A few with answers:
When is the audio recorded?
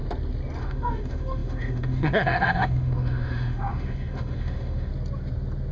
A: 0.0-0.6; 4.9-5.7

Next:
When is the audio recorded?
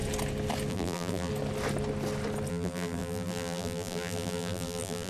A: 0.0-0.7; 1.3-2.5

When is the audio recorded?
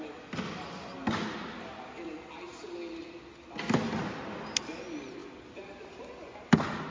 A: 0.0-6.9